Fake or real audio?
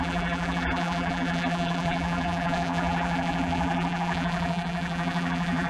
fake